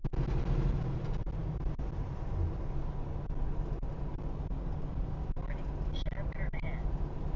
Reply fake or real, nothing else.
real